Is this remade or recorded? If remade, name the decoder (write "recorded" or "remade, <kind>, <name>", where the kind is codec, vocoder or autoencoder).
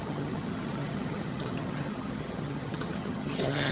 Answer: remade, vocoder, HiFi-GAN